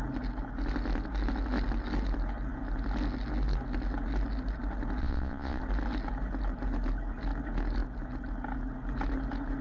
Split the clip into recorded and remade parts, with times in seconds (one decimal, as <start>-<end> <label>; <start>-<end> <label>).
0.0-5.0 recorded; 5.0-5.6 remade; 5.6-9.6 recorded